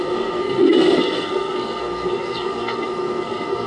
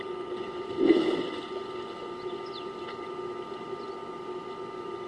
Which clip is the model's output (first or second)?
first